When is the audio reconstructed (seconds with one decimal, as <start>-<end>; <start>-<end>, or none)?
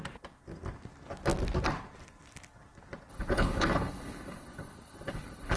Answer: 3.1-5.6